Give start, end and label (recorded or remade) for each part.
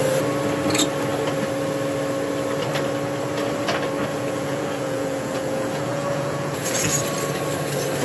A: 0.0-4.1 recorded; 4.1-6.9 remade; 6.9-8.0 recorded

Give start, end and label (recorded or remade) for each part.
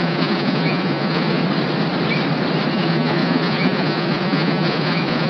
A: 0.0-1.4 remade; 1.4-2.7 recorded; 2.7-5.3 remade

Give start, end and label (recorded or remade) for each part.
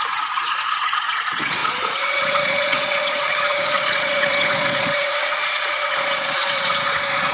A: 0.0-7.3 remade